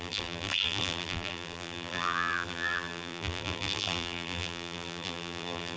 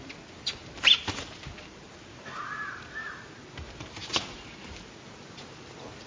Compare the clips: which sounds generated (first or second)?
first